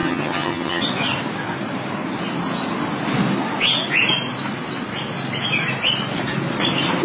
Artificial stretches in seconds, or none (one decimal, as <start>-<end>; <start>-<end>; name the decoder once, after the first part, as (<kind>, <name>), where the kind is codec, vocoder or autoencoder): 0.0-0.8 (vocoder, HiFi-GAN)